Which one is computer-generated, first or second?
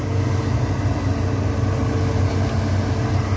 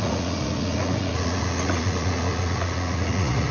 second